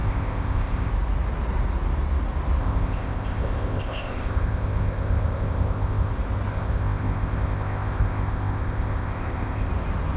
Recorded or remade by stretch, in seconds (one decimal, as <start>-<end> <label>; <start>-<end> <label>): 0.0-0.9 remade; 0.9-2.6 recorded; 2.6-6.1 remade; 6.1-6.5 recorded; 6.5-9.7 remade; 9.7-10.2 recorded